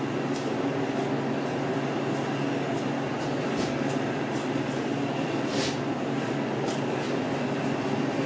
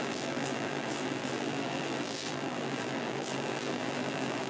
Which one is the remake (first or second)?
second